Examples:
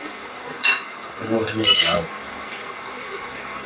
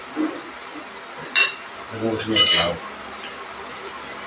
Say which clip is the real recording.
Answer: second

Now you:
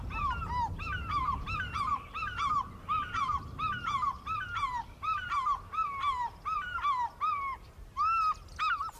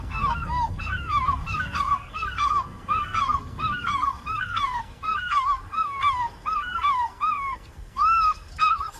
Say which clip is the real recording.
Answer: first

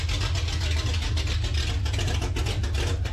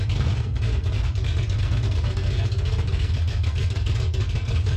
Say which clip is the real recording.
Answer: first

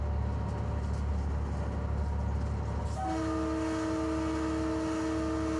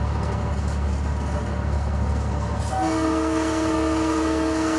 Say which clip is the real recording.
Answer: first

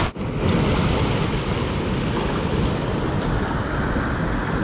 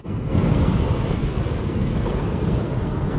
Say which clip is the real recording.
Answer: first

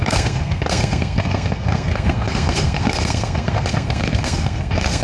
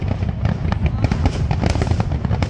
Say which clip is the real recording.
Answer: second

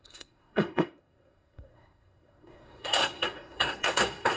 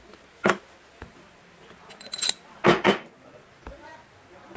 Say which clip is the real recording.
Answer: second